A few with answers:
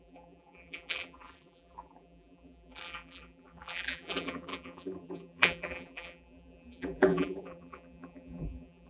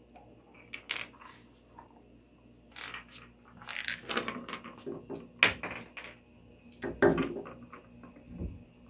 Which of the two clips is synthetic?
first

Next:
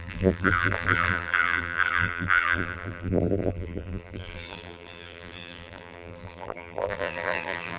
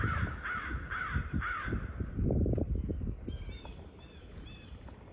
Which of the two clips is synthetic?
first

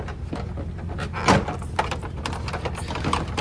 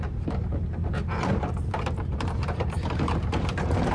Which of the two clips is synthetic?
second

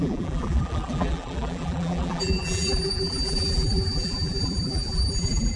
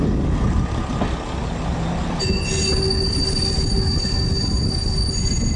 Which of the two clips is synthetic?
first